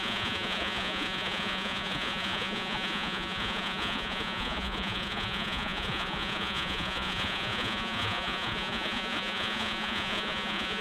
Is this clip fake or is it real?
fake